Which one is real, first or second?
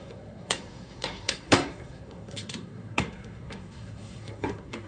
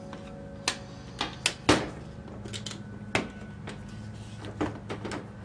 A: second